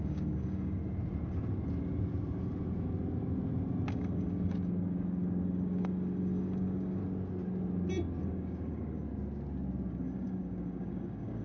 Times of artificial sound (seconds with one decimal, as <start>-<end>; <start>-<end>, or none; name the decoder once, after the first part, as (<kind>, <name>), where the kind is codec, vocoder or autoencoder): 0.0-0.8 (codec, DAC); 3.9-7.0; 8.2-9.1; 9.9-11.4